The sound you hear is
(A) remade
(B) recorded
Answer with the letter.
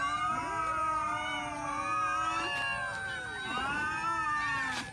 B